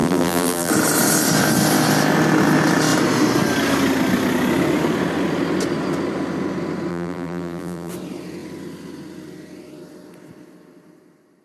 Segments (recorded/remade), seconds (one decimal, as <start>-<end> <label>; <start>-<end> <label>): 0.0-0.7 remade; 0.7-6.9 recorded; 6.9-7.9 remade; 7.9-11.4 recorded